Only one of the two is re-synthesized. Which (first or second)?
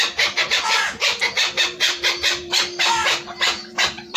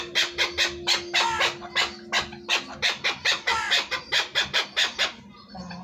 first